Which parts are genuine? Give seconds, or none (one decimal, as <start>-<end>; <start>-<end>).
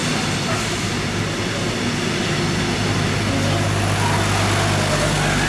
0.0-5.5